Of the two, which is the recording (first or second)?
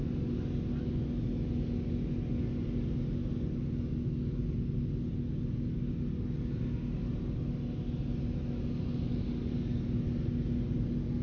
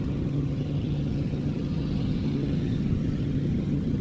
first